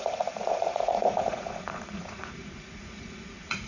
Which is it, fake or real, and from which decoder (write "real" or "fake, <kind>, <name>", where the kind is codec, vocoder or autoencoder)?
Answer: fake, vocoder, Vocos